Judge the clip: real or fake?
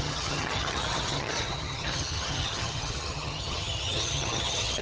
fake